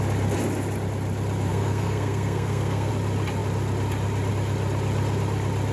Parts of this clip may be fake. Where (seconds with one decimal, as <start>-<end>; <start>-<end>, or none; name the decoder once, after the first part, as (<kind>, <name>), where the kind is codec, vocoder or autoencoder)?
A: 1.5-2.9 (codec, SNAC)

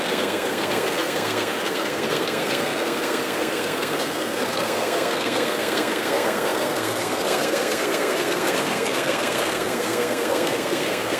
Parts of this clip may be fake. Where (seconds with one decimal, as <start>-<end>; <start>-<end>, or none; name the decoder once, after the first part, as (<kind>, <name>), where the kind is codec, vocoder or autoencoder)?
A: 0.0-11.2 (codec, SNAC)

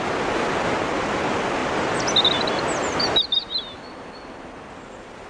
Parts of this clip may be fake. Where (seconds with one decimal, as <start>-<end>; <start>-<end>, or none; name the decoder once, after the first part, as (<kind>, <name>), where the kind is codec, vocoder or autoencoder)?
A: none

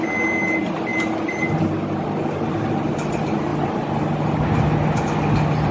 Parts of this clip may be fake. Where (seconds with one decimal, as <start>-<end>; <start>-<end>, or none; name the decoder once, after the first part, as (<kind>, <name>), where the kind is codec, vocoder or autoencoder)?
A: none

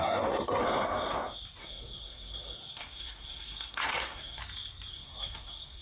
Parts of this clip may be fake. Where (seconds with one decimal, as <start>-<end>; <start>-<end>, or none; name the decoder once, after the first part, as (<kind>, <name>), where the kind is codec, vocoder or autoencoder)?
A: 0.0-0.6 (codec, SNAC); 1.6-4.4; 4.9-5.8

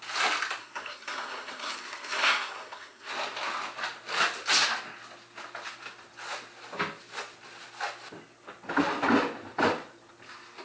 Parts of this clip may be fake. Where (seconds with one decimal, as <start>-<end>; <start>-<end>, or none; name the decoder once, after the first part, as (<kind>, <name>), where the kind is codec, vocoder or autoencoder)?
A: 0.6-3.1 (codec, SNAC)

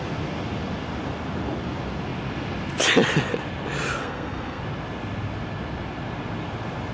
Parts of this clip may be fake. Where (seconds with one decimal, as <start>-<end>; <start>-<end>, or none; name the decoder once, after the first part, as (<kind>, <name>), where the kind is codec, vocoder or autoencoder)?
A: 4.0-4.6 (codec, SNAC)

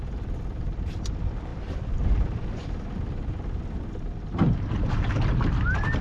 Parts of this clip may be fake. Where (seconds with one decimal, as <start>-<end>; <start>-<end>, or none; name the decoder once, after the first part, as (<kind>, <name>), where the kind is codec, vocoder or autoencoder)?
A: none